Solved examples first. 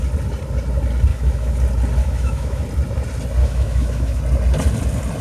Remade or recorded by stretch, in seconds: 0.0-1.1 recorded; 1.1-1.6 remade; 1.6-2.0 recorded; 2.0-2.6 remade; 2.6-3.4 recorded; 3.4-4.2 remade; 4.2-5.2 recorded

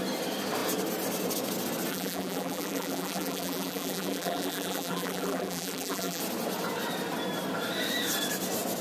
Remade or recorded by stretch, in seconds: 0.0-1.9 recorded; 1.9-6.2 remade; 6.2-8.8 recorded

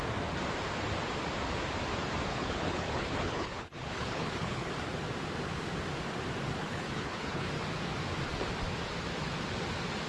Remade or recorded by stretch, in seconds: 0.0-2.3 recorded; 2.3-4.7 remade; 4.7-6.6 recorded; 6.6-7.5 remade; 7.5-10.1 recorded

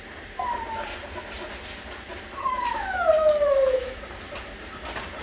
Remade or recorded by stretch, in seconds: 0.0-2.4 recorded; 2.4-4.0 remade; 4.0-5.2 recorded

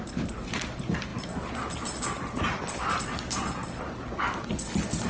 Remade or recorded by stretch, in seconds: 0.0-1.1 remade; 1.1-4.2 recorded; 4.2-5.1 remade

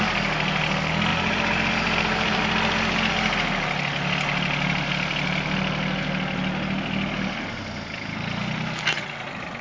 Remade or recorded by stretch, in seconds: 0.0-1.1 recorded; 1.1-2.4 remade; 2.4-9.6 recorded